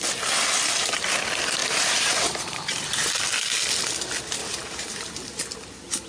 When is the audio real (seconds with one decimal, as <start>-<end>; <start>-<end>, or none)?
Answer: 0.0-1.6; 3.1-4.4; 5.4-6.1